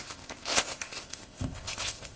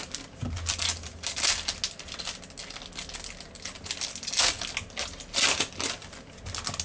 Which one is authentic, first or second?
second